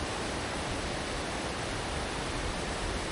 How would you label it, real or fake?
real